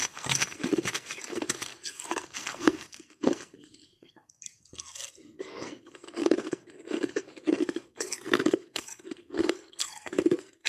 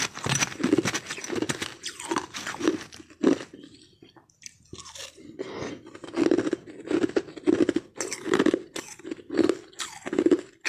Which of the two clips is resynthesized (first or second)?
first